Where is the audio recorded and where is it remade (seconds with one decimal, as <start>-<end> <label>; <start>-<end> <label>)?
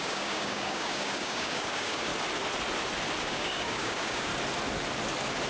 0.0-2.1 remade; 2.1-3.2 recorded; 3.2-4.3 remade; 4.3-5.5 recorded